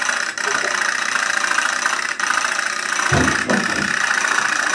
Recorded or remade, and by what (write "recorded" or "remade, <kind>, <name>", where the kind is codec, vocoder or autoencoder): recorded